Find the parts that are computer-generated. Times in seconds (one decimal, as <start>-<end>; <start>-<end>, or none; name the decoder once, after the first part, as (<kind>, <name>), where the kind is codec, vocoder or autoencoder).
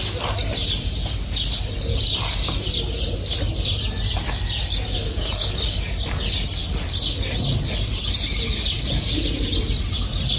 none